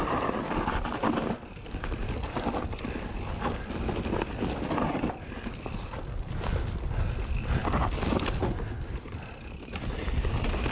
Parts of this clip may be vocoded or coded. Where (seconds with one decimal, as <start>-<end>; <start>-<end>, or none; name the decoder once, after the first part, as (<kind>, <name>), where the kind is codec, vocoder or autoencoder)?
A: none